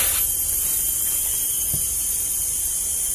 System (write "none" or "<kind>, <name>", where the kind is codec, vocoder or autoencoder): none